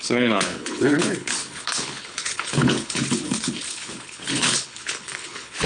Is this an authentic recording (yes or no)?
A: no